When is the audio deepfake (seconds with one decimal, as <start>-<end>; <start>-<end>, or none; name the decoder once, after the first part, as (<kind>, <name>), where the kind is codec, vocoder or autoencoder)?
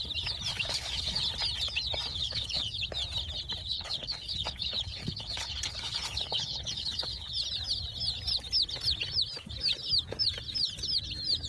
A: 0.5-1.2 (codec, HILCodec); 2.1-2.8; 3.6-7.3